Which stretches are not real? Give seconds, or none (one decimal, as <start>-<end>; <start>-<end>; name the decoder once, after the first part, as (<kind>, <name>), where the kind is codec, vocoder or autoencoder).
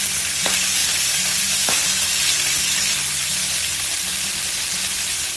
none